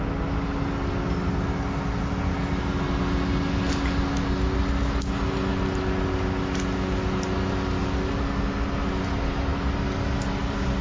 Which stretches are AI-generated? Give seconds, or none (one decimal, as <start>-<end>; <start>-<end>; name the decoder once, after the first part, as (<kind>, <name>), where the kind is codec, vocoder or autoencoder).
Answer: none